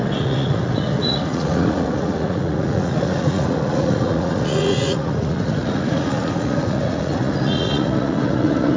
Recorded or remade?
remade